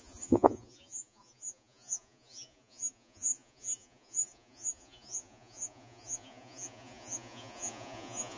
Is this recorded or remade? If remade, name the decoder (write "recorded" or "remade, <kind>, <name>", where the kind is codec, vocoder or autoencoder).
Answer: remade, vocoder, Vocos